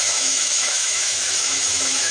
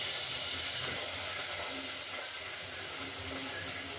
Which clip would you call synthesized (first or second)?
first